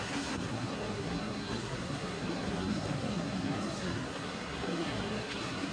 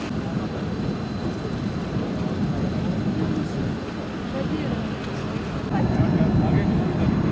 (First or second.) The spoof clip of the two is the first